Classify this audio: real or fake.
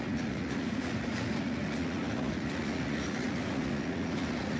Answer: fake